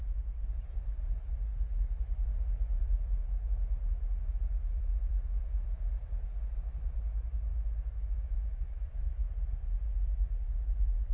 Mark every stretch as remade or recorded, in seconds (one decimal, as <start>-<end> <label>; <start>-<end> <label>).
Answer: 0.0-2.8 recorded; 2.8-3.4 remade; 3.4-7.5 recorded; 7.5-9.3 remade; 9.3-11.1 recorded